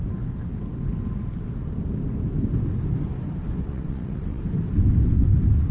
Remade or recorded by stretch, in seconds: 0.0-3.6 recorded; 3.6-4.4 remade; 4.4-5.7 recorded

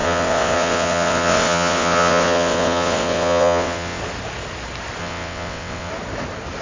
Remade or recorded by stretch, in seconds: 0.0-4.0 remade; 4.0-5.0 recorded; 5.0-5.9 remade; 5.9-6.6 recorded

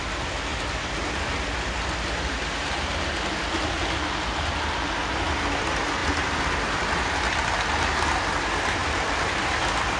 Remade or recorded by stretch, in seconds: 0.0-10.0 recorded

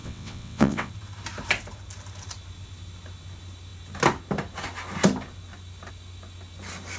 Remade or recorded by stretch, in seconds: 0.0-0.9 remade; 0.9-7.0 recorded

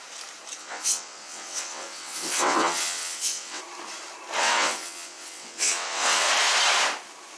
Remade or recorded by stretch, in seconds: 0.0-0.6 recorded; 0.6-3.6 remade; 3.6-4.4 recorded; 4.4-6.3 remade; 6.3-7.4 recorded

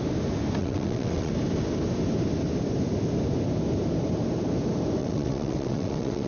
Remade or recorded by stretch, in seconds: 0.0-0.6 recorded; 0.6-1.3 remade; 1.3-5.0 recorded; 5.0-6.3 remade

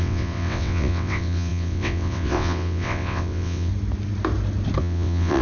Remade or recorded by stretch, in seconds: 0.0-3.7 remade; 3.7-4.8 recorded; 4.8-5.4 remade